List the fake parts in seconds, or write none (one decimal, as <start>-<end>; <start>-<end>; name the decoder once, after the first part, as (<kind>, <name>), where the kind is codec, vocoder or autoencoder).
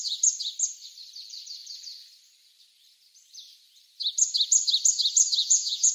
5.4-5.9 (vocoder, Vocos)